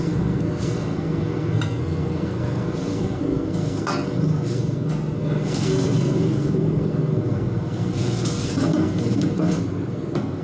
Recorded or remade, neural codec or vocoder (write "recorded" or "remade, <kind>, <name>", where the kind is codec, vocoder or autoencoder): remade, codec, SNAC